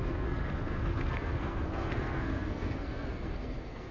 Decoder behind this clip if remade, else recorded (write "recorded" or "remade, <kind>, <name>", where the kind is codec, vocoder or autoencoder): remade, codec, SNAC